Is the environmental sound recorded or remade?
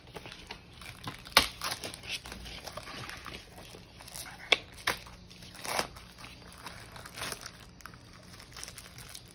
recorded